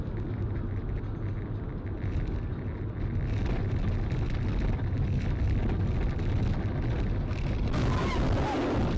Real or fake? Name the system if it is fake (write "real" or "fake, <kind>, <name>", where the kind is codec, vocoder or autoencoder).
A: real